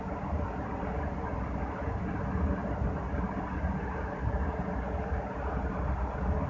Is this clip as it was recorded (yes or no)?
yes